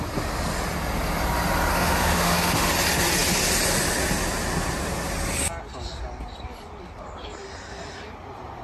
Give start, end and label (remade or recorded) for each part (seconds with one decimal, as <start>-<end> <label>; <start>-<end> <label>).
0.0-1.7 recorded; 1.7-2.7 remade; 2.7-8.6 recorded